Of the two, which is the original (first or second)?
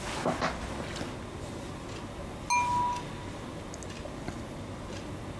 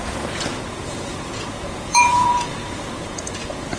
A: first